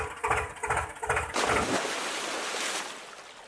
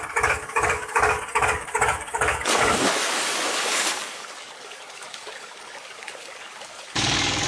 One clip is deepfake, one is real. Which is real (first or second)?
first